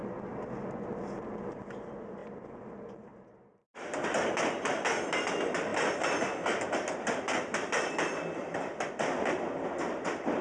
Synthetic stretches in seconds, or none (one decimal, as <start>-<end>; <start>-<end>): none